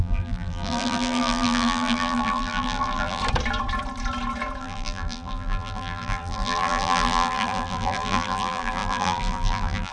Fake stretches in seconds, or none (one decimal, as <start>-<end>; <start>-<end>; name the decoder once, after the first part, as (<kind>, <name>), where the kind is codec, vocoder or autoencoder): 0.0-3.2 (vocoder, BigVGAN v2); 4.6-9.9